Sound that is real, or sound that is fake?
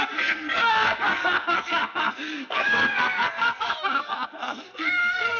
fake